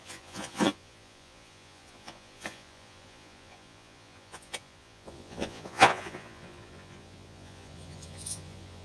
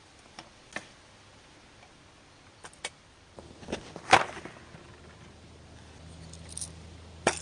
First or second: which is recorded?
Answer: second